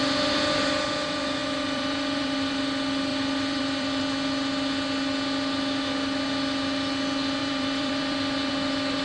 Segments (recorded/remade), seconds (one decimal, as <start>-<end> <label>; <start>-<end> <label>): 0.0-1.4 recorded; 1.4-2.5 remade; 2.5-3.1 recorded; 3.1-4.0 remade; 4.0-7.4 recorded; 7.4-8.5 remade; 8.5-9.0 recorded